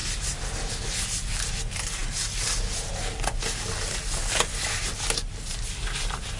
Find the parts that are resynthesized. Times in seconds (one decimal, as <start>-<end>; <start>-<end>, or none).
none